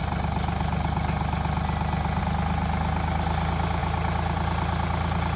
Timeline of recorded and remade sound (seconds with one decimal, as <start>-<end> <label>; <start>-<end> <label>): 0.0-5.4 recorded